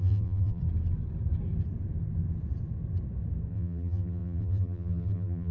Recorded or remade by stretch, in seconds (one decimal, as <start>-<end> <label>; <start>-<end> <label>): 0.0-0.6 remade; 0.6-3.5 recorded; 3.5-5.5 remade